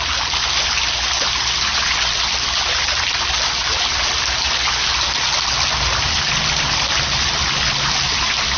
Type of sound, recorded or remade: recorded